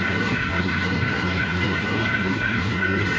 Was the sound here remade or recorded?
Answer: remade